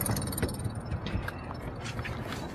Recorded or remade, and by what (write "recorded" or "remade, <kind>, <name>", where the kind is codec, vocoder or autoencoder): remade, vocoder, BigVGAN v2